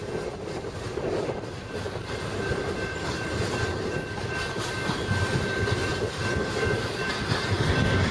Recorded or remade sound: recorded